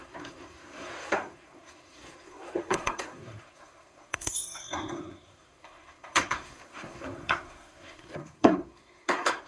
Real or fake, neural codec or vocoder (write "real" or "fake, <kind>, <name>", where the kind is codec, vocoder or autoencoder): fake, codec, SNAC